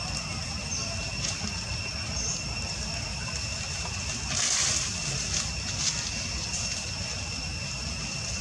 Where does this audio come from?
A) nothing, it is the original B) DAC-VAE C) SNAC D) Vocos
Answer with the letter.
A